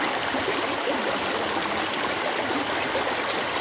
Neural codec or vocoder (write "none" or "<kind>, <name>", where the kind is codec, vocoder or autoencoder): none